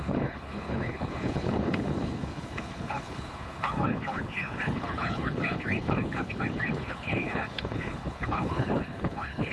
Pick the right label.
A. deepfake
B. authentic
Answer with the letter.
A